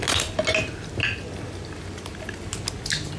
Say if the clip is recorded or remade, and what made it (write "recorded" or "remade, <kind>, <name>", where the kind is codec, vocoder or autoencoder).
recorded